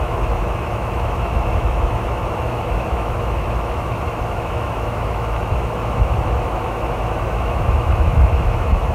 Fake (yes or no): yes